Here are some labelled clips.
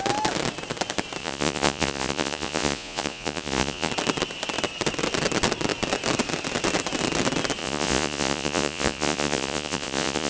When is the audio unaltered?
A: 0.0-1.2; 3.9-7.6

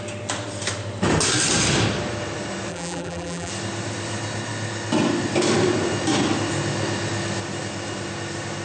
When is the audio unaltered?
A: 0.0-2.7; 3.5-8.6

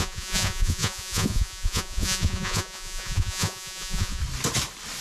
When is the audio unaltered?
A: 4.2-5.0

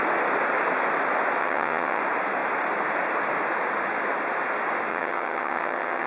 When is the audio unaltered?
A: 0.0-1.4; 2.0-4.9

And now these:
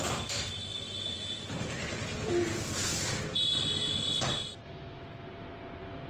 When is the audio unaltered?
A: 0.0-6.1